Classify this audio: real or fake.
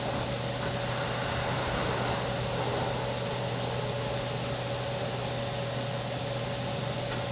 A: real